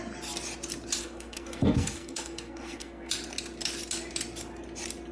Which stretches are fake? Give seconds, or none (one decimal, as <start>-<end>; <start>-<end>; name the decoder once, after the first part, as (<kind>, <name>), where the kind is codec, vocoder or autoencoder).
1.0-3.1 (codec, SNAC)